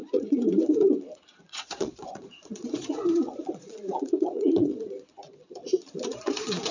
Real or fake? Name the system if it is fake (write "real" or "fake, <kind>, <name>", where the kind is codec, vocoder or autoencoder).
fake, vocoder, Vocos